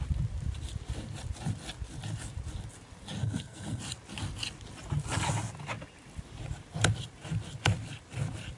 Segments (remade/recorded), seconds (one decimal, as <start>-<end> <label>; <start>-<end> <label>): 0.0-3.2 recorded; 3.2-3.8 remade; 3.8-8.6 recorded